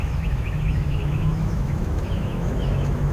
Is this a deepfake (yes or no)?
yes